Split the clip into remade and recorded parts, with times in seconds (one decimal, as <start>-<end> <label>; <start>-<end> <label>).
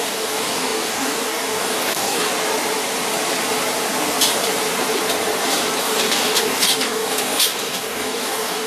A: 0.0-2.3 remade; 2.3-5.8 recorded; 5.8-8.7 remade